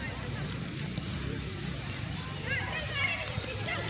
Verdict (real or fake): real